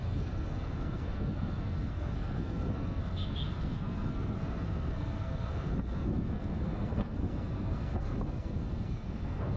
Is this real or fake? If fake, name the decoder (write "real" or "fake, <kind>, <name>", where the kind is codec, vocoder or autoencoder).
fake, codec, SNAC